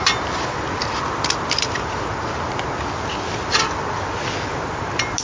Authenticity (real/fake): real